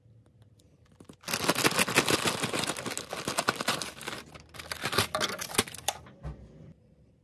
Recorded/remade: recorded